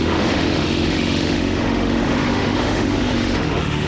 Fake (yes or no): yes